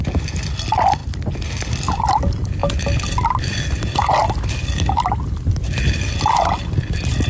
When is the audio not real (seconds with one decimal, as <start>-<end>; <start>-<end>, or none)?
none